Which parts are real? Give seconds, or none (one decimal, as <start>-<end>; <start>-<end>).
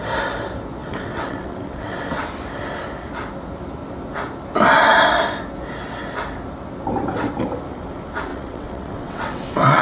0.0-0.8; 2.2-8.3